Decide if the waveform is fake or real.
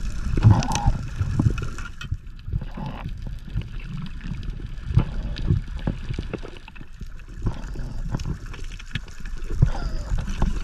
fake